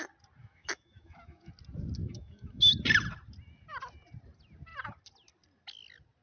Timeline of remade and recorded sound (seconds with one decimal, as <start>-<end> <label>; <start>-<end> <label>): 0.0-0.4 recorded; 0.4-1.5 remade; 1.5-2.0 recorded; 2.0-2.7 remade; 2.7-6.2 recorded